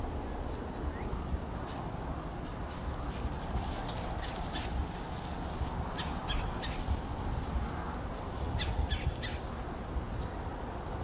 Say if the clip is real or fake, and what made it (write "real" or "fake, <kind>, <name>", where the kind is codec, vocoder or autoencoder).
real